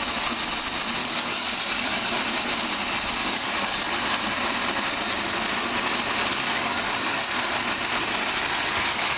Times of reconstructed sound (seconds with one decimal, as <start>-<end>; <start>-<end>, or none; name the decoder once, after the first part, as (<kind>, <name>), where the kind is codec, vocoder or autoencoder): 1.0-2.1 (codec, DAC); 3.2-3.9; 6.3-7.2; 8.7-9.2